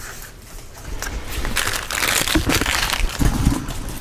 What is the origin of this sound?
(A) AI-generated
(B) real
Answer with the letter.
B